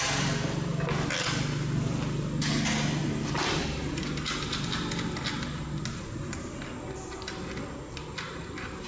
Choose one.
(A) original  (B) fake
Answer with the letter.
A